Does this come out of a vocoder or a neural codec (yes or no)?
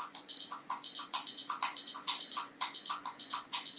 yes